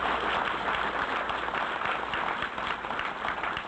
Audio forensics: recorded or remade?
recorded